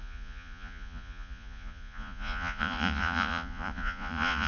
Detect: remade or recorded remade